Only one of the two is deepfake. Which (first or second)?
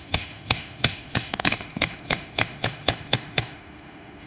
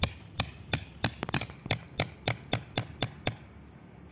first